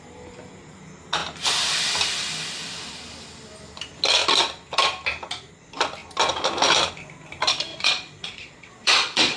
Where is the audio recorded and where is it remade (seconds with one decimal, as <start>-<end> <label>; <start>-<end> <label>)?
0.0-7.7 recorded; 7.7-9.4 remade